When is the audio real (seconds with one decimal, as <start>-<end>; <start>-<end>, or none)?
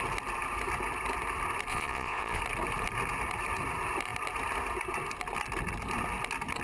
0.0-1.7; 2.4-6.6